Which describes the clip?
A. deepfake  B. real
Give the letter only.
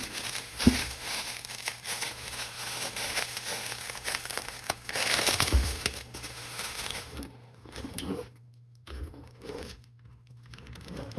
A